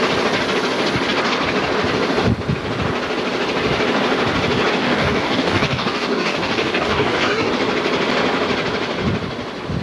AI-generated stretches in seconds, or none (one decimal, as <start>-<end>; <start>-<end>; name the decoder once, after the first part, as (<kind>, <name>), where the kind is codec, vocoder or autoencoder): 4.8-7.5 (codec, DAC)